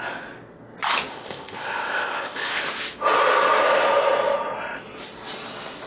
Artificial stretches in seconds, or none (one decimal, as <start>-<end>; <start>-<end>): 1.1-2.6